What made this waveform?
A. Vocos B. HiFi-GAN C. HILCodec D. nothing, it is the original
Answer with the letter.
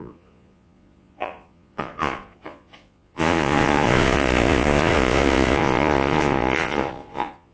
A